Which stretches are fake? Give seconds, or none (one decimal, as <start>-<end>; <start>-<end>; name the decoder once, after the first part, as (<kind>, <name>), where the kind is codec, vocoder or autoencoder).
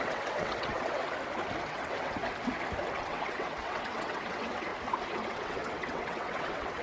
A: 0.0-1.0 (vocoder, WaveNeXt); 1.6-2.2; 3.0-4.7; 5.3-6.8